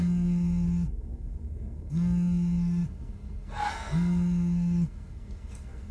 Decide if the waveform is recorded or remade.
remade